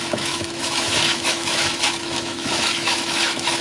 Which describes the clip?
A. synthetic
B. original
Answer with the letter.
A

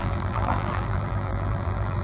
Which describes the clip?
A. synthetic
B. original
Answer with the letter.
A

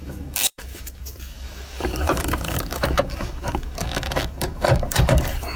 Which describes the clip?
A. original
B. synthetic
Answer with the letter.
B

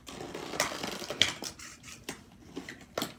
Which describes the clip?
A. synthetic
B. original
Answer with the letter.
B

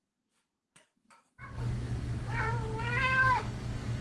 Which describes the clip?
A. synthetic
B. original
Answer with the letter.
A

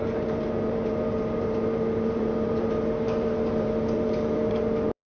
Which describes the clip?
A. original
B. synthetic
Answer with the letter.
B